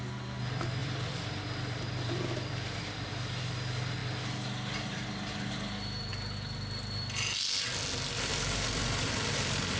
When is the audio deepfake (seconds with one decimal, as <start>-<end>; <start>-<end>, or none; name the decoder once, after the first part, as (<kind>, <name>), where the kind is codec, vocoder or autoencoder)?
0.8-3.1 (vocoder, BigVGAN v2); 8.3-9.8